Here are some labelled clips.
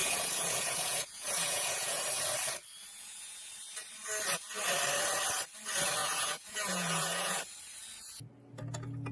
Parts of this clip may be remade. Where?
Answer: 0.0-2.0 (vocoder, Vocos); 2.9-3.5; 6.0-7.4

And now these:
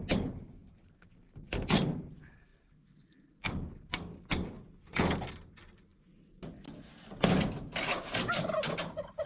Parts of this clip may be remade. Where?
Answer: none

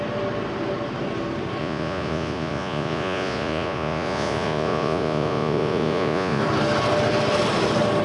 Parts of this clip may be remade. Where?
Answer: 1.6-6.4 (vocoder, Vocos)

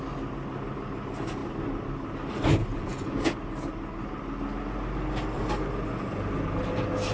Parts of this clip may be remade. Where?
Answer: 2.7-3.3 (vocoder, Vocos)

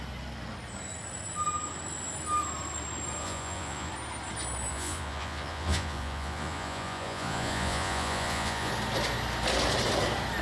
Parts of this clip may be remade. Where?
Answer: 3.2-3.9 (vocoder, Vocos); 4.7-8.7

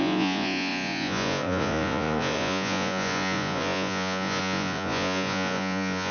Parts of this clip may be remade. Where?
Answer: 0.0-6.1 (vocoder, Vocos)